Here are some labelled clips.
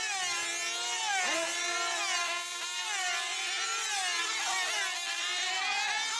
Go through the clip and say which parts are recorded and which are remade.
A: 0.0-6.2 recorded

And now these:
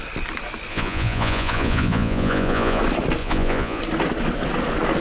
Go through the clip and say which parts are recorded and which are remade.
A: 0.0-0.7 recorded; 0.7-2.8 remade; 2.8-3.2 recorded; 3.2-3.8 remade; 3.8-5.0 recorded

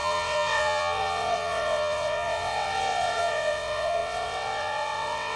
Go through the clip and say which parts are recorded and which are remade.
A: 0.0-5.4 remade